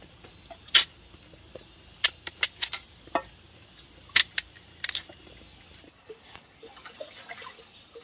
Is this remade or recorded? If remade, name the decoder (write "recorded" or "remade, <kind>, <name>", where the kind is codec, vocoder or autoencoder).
recorded